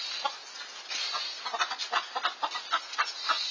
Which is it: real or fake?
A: real